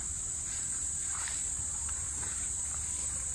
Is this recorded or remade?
remade